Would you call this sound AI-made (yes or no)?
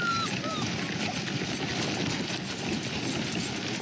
no